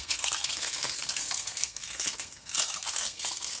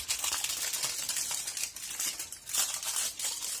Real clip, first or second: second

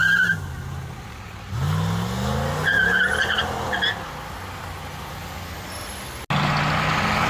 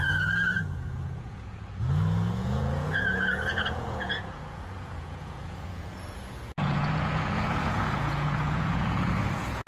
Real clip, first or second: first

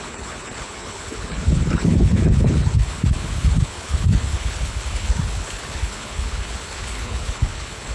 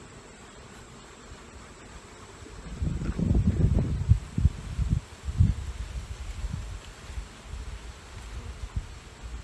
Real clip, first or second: second